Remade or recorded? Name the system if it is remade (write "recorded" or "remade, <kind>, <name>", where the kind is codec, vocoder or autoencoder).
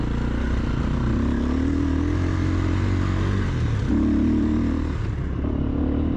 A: recorded